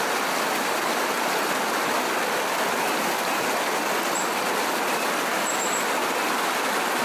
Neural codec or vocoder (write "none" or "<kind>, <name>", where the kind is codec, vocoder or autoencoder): none